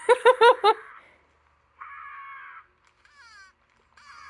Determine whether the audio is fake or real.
real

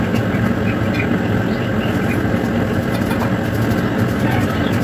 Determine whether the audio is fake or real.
real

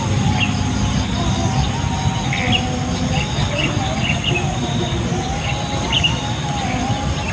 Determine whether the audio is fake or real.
real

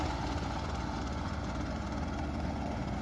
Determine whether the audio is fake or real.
fake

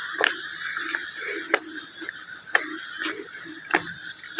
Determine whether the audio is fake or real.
real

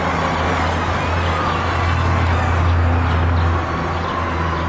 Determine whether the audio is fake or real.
real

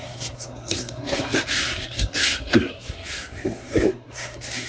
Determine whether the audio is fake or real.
fake